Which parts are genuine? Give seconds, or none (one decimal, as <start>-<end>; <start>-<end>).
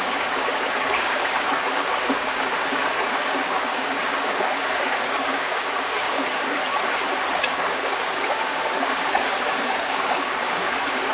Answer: 6.6-7.4